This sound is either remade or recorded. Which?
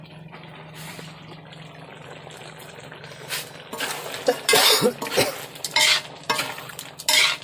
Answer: recorded